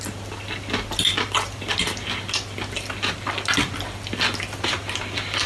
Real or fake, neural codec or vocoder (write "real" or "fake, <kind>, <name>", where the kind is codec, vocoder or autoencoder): real